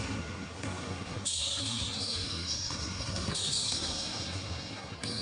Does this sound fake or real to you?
fake